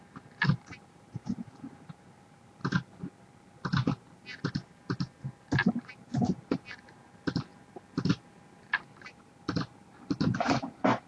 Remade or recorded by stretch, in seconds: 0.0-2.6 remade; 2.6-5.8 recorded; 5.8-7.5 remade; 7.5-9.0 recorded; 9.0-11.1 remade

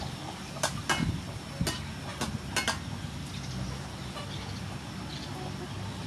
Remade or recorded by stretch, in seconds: 0.0-6.1 recorded

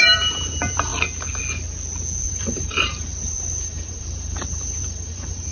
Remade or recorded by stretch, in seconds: 0.0-0.9 remade; 0.9-2.3 recorded; 2.3-5.5 remade

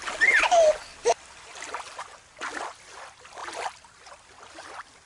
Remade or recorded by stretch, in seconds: 0.0-0.9 recorded; 0.9-2.0 remade; 2.0-3.4 recorded; 3.4-3.9 remade; 3.9-5.1 recorded

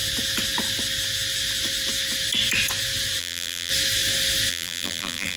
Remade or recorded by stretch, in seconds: 0.0-3.2 recorded; 3.2-3.7 remade; 3.7-4.5 recorded; 4.5-5.4 remade

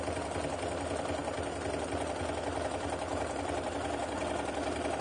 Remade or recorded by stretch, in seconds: 0.0-1.2 recorded; 1.2-1.7 remade; 1.7-3.1 recorded; 3.1-3.7 remade; 3.7-5.0 recorded

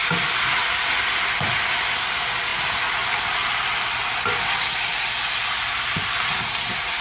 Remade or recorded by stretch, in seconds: 0.0-1.0 remade; 1.0-2.5 recorded; 2.5-7.0 remade

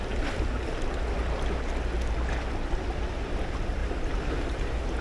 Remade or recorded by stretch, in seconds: 0.0-3.8 recorded; 3.8-5.0 remade